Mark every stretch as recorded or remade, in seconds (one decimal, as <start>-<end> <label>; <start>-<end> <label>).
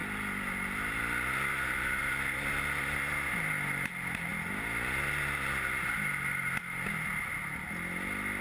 0.0-8.4 recorded